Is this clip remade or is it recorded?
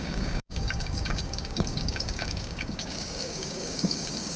remade